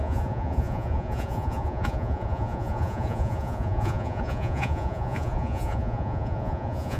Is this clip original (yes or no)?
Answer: no